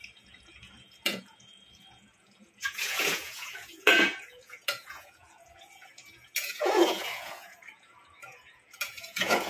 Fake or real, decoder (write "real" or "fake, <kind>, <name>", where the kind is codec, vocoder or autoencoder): fake, vocoder, Vocos